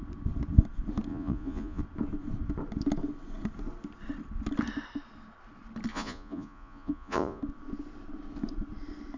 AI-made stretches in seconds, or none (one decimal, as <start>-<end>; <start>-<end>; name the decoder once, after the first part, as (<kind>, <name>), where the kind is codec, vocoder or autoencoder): 1.1-1.8 (vocoder, Vocos); 5.9-7.4